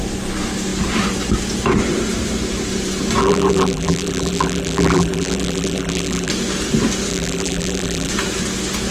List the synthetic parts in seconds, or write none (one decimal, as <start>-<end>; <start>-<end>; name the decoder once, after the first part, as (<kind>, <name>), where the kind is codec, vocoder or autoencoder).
3.2-6.3 (vocoder, BigVGAN v2); 7.1-8.1

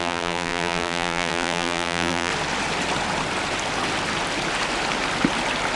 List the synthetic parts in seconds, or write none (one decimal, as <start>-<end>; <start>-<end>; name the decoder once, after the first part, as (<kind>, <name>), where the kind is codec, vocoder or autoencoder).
0.0-2.3 (vocoder, BigVGAN v2)

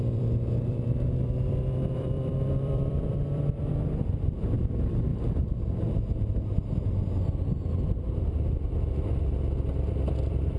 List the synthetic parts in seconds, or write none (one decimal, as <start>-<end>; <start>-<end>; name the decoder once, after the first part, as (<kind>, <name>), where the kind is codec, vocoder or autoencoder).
0.0-5.1 (vocoder, BigVGAN v2); 9.9-10.6

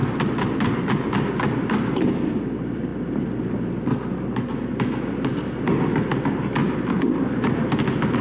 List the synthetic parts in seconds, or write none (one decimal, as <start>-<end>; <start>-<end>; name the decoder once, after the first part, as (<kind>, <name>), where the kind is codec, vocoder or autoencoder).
none

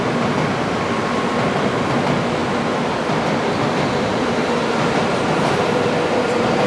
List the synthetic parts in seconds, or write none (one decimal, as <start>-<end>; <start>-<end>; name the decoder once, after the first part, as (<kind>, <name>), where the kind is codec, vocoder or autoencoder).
2.4-6.7 (vocoder, BigVGAN v2)

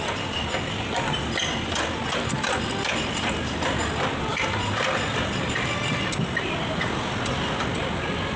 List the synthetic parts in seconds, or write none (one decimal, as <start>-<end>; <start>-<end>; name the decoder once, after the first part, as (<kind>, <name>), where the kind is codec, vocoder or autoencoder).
0.0-8.4 (vocoder, BigVGAN v2)

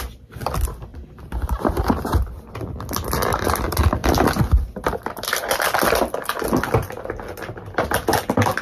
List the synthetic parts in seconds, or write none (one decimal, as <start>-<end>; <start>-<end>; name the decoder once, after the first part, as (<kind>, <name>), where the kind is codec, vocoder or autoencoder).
4.0-6.6 (vocoder, BigVGAN v2)

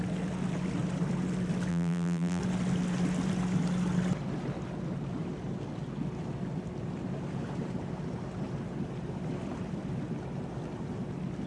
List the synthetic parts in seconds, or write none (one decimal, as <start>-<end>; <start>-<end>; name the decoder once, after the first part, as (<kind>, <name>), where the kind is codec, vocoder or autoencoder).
1.7-2.4 (vocoder, BigVGAN v2)